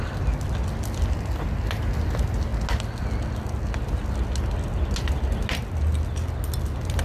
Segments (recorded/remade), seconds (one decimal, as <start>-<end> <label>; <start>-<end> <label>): 0.0-7.0 recorded